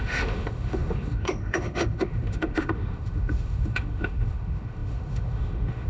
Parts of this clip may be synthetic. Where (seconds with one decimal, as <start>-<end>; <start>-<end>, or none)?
0.0-5.9